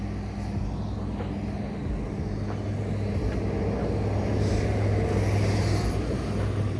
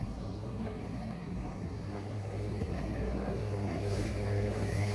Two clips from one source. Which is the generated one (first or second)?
second